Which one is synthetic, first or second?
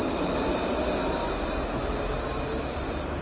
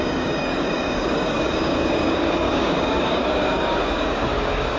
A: second